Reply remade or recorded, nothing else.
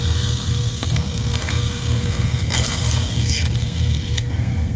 remade